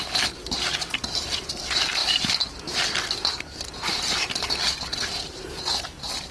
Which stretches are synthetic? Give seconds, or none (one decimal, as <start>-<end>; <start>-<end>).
none